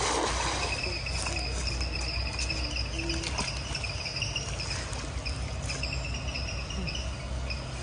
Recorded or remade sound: recorded